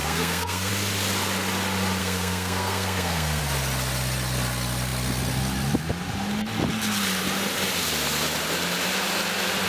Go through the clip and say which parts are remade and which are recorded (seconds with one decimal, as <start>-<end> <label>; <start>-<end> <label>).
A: 0.0-0.7 remade; 0.7-2.0 recorded; 2.0-3.4 remade; 3.4-9.7 recorded